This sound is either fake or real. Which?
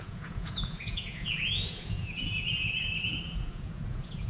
fake